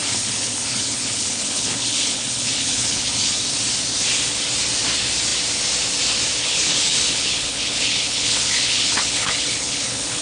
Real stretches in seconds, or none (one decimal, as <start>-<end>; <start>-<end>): 3.4-6.4